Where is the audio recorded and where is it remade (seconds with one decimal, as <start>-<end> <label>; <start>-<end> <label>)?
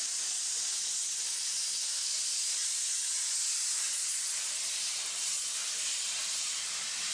0.0-7.1 recorded